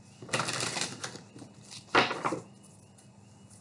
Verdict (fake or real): real